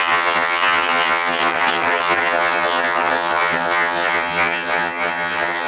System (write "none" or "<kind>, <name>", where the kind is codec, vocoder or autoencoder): vocoder, HiFi-GAN